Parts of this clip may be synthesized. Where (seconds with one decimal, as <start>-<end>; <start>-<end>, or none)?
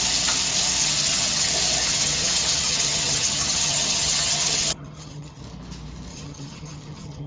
0.8-1.5; 1.9-5.4; 6.1-7.3